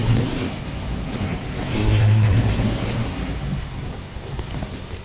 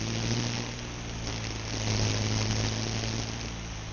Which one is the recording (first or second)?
second